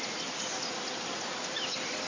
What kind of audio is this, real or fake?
real